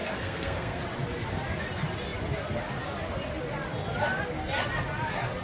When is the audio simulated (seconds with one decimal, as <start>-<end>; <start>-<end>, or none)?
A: 0.0-0.8